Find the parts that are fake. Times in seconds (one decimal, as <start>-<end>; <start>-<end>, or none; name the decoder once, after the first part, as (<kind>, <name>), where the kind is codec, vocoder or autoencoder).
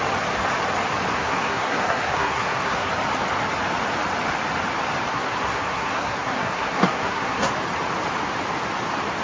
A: 1.1-2.9 (codec, SNAC); 5.1-7.5